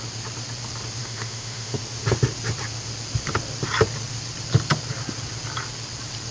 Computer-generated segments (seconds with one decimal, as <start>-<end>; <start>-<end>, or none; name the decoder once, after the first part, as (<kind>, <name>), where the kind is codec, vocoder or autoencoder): 1.0-1.8 (autoencoder, DAC-VAE)